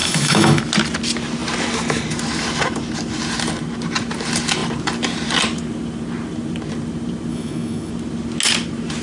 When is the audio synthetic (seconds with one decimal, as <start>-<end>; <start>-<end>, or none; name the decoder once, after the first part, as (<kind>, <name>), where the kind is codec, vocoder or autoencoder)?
0.0-0.6 (autoencoder, DAC-VAE); 7.3-7.9